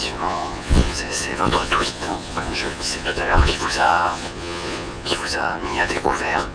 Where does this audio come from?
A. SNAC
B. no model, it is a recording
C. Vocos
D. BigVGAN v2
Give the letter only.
C